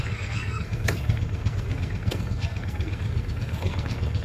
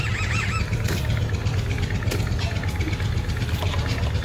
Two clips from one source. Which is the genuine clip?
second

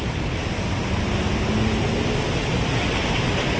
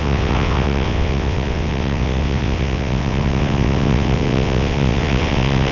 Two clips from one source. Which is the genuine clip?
first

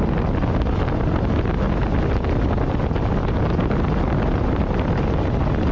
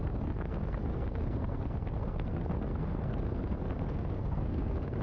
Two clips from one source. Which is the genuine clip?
first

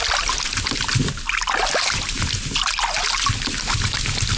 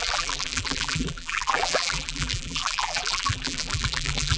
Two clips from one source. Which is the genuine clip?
first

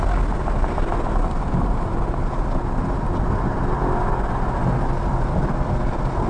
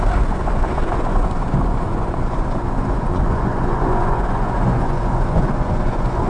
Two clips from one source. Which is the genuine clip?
first